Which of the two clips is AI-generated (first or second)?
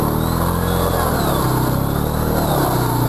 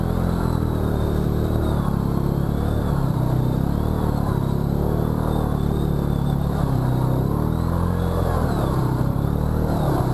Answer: second